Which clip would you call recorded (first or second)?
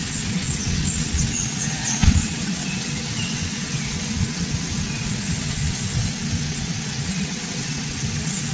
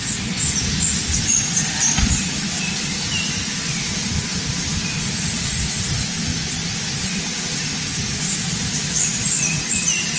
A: second